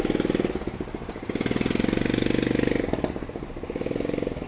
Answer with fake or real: real